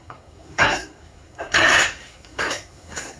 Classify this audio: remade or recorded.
remade